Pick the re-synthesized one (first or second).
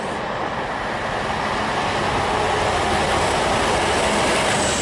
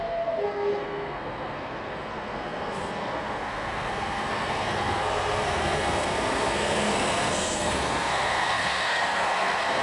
second